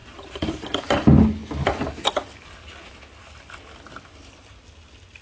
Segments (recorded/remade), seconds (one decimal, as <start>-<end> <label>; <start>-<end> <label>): 0.0-0.8 remade; 0.8-5.2 recorded